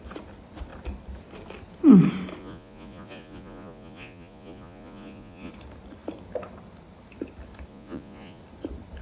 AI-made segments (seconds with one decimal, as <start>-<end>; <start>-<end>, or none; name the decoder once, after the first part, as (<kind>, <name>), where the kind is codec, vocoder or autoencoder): 2.4-5.5 (vocoder, Vocos); 7.7-8.4